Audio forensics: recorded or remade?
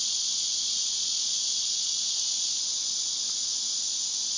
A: recorded